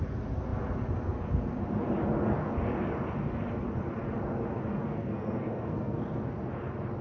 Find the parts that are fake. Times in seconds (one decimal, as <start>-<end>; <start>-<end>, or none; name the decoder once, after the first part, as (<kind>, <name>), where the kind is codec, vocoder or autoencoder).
4.7-6.0 (codec, SNAC)